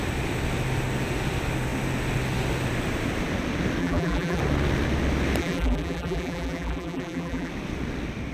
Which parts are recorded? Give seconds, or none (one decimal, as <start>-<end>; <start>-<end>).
0.0-3.8; 4.4-5.4; 7.5-8.3